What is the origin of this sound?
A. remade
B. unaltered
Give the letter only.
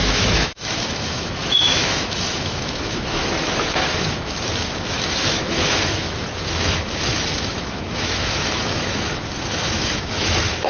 A